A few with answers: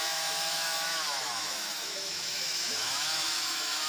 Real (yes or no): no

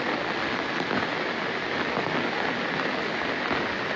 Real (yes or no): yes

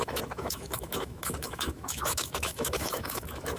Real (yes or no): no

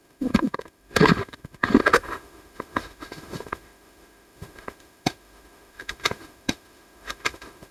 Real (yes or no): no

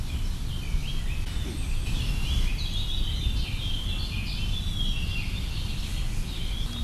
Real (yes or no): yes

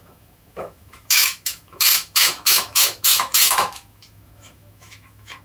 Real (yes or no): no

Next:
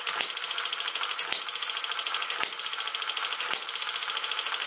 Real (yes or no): yes